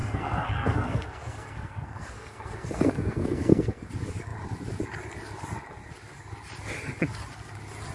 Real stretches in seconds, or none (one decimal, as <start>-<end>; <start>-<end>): 3.9-7.9